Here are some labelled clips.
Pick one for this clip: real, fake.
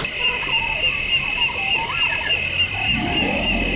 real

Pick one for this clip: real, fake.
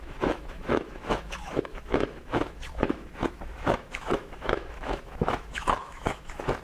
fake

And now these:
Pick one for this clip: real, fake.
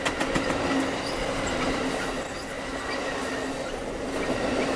real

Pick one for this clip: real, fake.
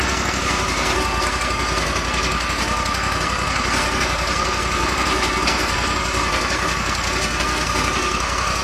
fake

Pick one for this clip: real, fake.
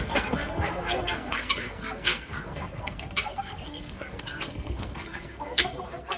fake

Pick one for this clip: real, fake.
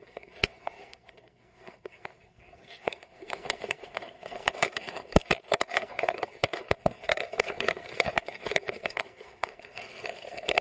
fake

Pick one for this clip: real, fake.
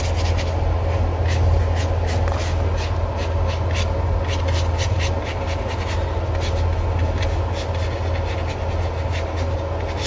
real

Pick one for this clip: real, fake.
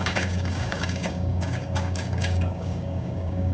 fake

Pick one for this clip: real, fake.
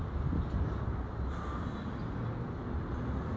real